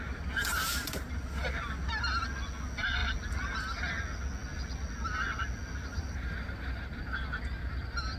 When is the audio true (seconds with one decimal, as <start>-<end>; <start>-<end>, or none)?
0.0-5.9; 6.8-8.2